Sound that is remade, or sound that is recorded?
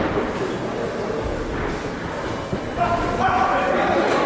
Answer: recorded